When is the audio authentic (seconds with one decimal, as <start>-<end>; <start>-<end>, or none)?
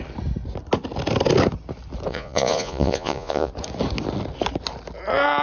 0.0-2.1; 3.5-5.4